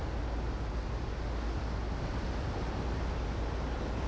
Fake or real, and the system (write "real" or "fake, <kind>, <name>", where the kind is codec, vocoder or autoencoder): real